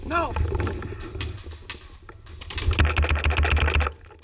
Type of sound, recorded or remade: recorded